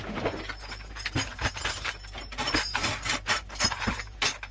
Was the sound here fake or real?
fake